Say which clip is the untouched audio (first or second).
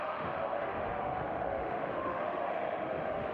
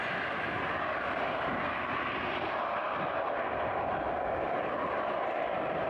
second